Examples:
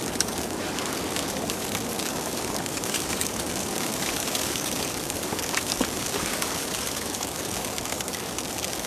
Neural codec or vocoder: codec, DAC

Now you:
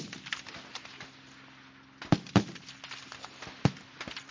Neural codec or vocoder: none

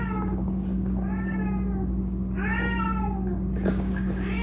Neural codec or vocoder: codec, DAC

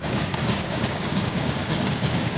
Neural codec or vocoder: codec, DAC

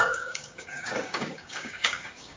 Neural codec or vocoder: codec, DAC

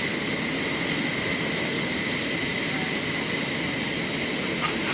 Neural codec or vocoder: none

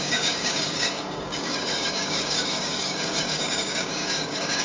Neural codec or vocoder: codec, DAC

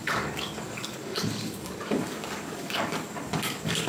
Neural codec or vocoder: codec, DAC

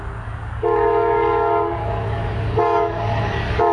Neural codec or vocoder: codec, DAC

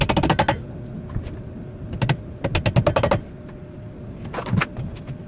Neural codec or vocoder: none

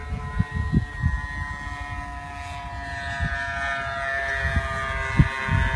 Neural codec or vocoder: none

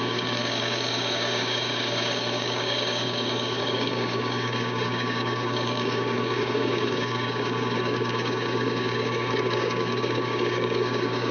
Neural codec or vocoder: codec, DAC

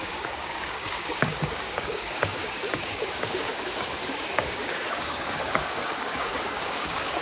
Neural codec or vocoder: codec, DAC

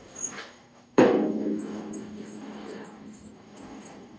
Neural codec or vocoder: codec, DAC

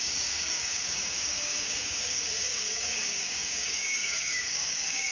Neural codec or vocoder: codec, DAC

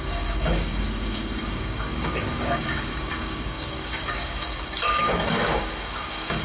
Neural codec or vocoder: codec, DAC